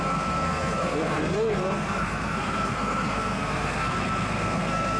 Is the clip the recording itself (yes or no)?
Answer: no